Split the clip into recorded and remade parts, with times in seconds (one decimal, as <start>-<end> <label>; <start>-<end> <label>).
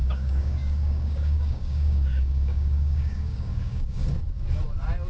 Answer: 0.0-4.0 remade; 4.0-5.1 recorded